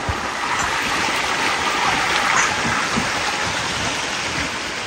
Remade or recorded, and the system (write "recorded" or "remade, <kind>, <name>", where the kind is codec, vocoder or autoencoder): recorded